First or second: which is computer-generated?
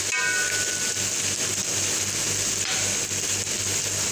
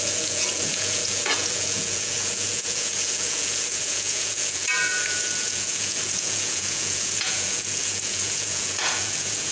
second